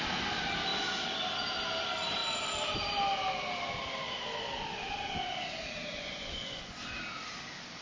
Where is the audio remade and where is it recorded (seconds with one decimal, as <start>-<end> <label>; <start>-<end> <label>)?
0.0-5.9 recorded; 5.9-7.0 remade; 7.0-7.8 recorded